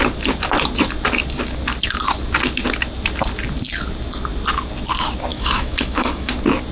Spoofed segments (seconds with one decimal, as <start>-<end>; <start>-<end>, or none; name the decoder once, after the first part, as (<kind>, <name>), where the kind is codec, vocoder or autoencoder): 5.3-6.3 (autoencoder, DAC-VAE)